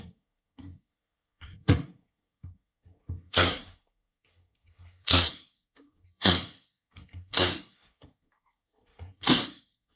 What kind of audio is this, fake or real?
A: fake